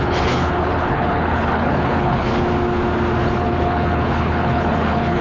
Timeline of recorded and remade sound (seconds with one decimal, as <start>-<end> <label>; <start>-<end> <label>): 0.0-2.3 remade; 2.3-3.2 recorded; 3.2-5.2 remade